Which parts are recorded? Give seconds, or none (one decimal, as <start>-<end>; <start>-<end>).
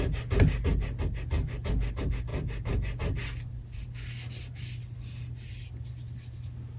0.0-6.8